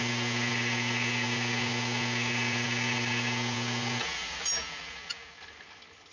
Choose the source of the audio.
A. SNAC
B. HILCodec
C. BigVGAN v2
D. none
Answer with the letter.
D